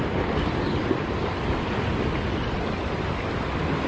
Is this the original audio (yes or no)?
yes